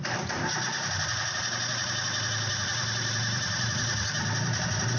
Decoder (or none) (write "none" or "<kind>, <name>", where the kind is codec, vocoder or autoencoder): vocoder, BigVGAN v2